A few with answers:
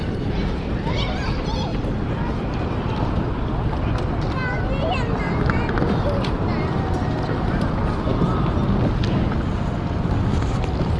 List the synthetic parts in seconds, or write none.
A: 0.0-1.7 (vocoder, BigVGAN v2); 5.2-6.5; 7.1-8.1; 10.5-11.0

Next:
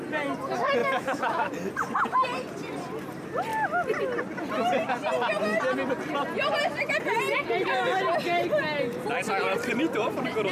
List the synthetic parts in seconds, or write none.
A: 0.8-1.5 (autoencoder, DAC-VAE)

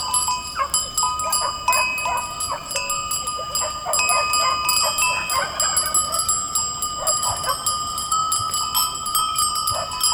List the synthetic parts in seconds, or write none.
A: none

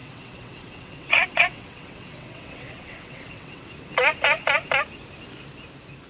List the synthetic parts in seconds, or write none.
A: 0.0-3.7 (vocoder, WaveNeXt)

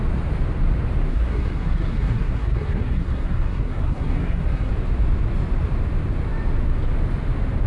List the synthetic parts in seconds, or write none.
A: 1.1-4.7 (codec, SNAC)